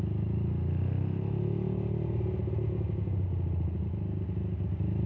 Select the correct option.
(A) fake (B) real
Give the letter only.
B